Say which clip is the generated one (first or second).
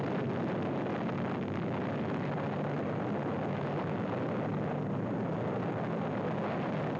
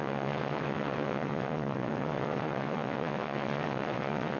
second